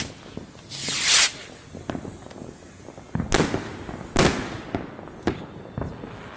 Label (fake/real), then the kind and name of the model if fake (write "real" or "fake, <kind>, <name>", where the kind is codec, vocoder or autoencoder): real